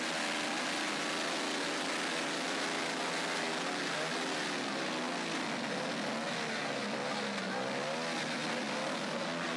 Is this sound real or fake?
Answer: real